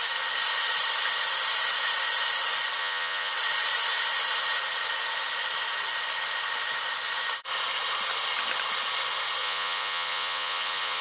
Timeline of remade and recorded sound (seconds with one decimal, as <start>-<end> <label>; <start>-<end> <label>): 0.0-2.8 recorded; 2.8-3.3 remade; 3.3-9.4 recorded; 9.4-11.0 remade